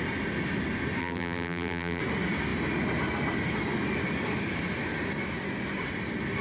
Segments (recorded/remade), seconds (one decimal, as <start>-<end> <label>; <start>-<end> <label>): 0.0-1.0 recorded; 1.0-2.0 remade; 2.0-6.4 recorded